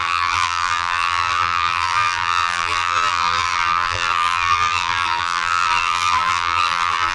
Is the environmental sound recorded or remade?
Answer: remade